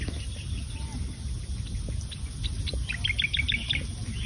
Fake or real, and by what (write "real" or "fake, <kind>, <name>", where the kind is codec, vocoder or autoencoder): real